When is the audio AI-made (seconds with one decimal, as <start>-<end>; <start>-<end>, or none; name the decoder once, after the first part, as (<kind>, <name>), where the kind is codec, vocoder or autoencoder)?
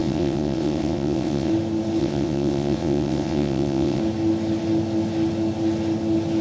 0.0-1.5 (vocoder, WaveNeXt); 2.0-4.0